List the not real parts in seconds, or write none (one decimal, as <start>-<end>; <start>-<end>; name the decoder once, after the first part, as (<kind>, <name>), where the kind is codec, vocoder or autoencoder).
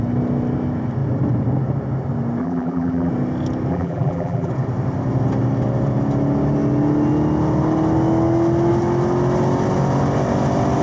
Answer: 2.4-3.1 (vocoder, BigVGAN v2); 3.7-4.5